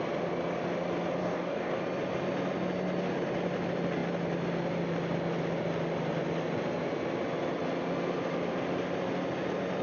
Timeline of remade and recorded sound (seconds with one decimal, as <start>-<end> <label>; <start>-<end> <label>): 0.0-1.2 recorded; 1.2-1.8 remade; 1.8-9.8 recorded